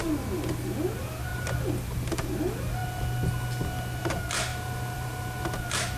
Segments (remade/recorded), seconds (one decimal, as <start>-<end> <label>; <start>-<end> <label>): 0.0-4.5 recorded; 4.5-5.4 remade; 5.4-6.0 recorded